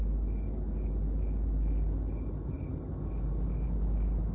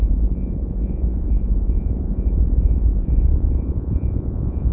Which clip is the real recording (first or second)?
first